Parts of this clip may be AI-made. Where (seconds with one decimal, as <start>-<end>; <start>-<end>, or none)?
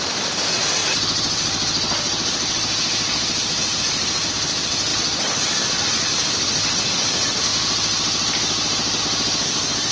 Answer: 0.8-4.3; 7.5-9.0